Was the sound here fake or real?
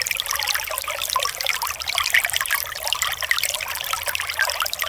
real